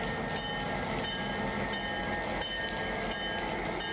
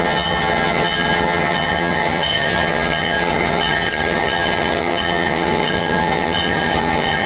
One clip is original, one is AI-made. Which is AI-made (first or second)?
second